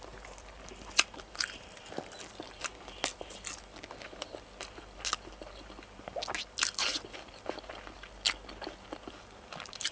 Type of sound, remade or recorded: recorded